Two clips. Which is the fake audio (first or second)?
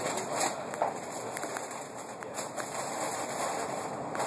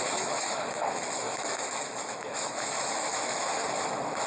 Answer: second